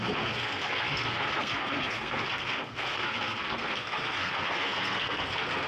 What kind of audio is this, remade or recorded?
remade